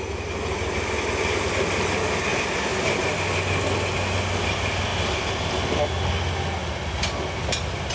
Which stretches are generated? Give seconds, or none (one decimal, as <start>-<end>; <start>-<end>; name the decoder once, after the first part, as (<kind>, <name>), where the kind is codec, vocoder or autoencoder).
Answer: 2.3-3.4 (vocoder, BigVGAN v2); 4.9-5.5